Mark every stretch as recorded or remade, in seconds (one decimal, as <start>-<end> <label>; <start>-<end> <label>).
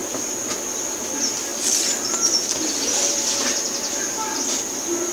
0.0-5.1 recorded